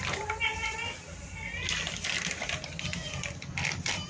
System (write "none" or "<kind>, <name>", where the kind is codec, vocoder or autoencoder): none